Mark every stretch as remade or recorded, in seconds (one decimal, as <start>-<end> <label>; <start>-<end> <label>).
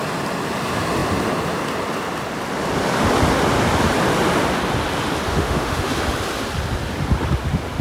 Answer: 0.0-5.3 recorded; 5.3-5.9 remade; 5.9-7.8 recorded